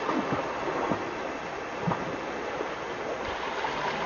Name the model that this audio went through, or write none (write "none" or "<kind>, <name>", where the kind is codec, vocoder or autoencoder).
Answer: none